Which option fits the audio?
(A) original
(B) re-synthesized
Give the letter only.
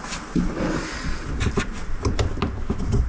A